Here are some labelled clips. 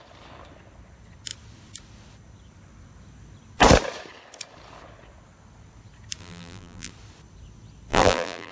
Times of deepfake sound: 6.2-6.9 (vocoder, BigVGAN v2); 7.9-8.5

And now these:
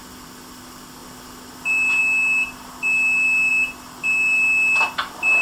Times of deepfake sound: none

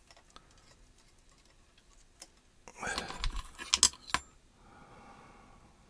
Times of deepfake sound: none

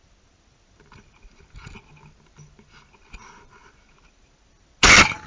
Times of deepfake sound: none

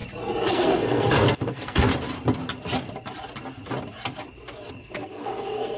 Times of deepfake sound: 0.5-1.9 (codec, SNAC); 4.7-5.8

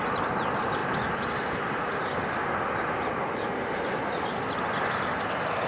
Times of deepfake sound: none

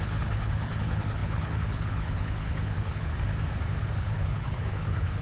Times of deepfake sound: 0.0-3.1 (codec, HILCodec); 4.0-5.2

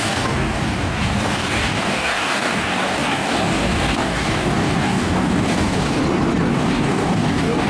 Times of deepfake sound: 0.0-6.0 (codec, DAC); 6.5-7.7